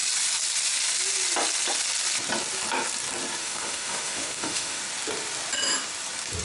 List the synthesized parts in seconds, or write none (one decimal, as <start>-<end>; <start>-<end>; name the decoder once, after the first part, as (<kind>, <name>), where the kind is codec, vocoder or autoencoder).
3.4-4.8 (autoencoder, DAC-VAE)